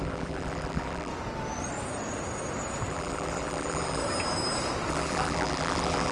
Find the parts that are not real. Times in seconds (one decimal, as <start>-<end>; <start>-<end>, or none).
0.0-1.1; 2.9-4.0; 4.9-6.1